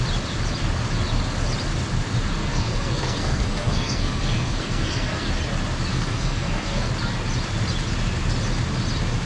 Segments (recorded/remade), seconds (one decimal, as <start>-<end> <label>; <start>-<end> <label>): 0.0-2.4 recorded; 2.4-5.3 remade; 5.3-5.9 recorded; 5.9-6.9 remade; 6.9-9.3 recorded